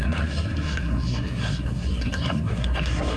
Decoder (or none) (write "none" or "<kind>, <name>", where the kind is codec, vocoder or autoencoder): codec, SNAC